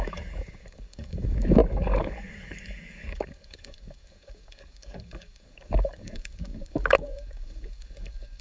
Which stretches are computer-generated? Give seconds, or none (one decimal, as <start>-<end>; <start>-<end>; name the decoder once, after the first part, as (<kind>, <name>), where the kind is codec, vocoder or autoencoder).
0.0-8.4 (codec, DAC)

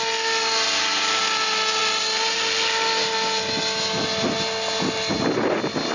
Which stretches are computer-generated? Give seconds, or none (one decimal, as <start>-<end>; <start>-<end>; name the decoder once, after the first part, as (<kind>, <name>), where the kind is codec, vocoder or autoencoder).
none

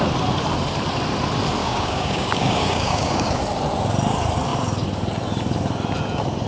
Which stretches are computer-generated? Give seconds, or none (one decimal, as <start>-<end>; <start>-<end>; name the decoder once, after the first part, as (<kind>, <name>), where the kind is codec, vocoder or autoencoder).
1.6-3.4 (codec, DAC)

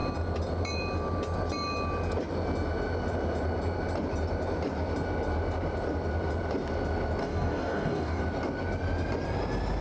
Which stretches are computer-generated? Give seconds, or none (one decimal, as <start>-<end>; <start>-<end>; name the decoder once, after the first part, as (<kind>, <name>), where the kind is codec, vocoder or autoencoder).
7.2-8.2 (codec, DAC)

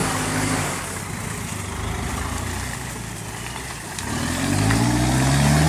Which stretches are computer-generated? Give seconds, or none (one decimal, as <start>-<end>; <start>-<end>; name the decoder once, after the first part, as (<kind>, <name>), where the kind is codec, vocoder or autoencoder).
0.0-1.0 (codec, DAC)

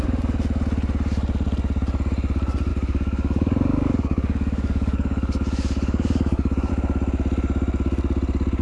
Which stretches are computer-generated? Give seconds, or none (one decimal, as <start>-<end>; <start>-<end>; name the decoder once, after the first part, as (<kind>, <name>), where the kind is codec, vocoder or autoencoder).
2.7-6.7 (codec, DAC)

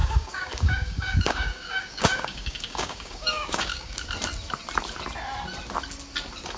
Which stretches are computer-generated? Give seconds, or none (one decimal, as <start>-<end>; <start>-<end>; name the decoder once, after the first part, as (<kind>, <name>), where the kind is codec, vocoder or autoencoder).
0.0-4.0 (codec, DAC)